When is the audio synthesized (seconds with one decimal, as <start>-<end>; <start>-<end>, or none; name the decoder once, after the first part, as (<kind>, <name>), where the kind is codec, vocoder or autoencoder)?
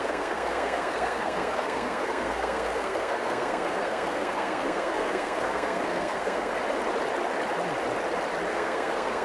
0.0-6.5 (codec, SNAC); 8.5-9.2